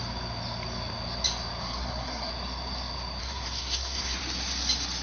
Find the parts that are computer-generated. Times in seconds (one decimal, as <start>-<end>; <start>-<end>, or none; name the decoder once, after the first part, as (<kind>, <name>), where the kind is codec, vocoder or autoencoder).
1.6-2.3 (codec, SNAC); 3.2-4.2